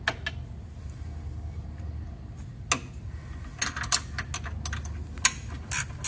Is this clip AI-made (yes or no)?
no